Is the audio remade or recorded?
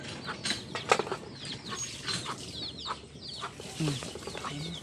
recorded